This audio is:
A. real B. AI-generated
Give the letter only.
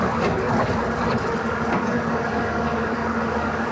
B